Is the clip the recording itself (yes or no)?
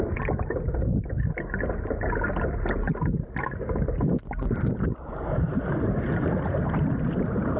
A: yes